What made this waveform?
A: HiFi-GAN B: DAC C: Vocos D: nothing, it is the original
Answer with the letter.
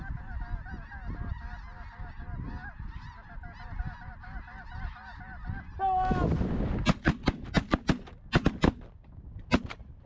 D